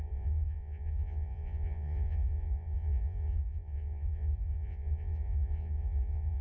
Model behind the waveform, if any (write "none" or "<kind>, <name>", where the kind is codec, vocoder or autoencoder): vocoder, Vocos